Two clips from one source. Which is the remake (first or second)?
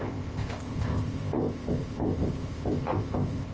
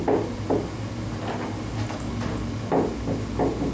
first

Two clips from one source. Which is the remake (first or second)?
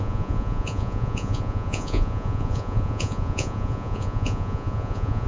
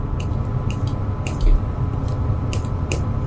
first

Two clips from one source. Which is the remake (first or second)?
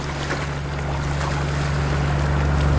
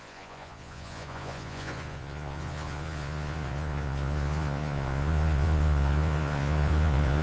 second